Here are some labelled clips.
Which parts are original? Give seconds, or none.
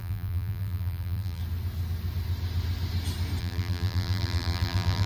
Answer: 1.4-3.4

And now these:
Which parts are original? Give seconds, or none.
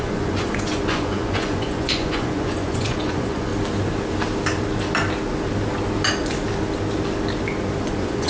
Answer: 3.5-7.9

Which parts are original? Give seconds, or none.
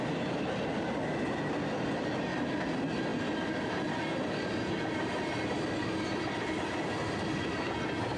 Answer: 0.0-8.2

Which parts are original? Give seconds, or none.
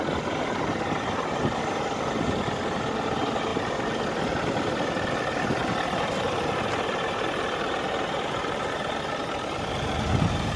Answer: 0.0-3.5; 4.0-10.6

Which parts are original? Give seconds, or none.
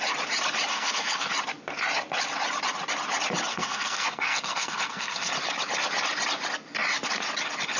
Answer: 0.0-0.7; 1.3-3.5; 5.3-7.8